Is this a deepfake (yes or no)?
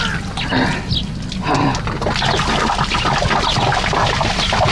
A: no